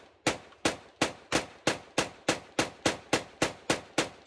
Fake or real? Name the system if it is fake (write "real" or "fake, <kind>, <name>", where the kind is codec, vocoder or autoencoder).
real